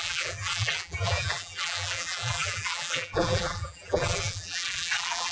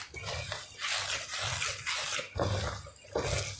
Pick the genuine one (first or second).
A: second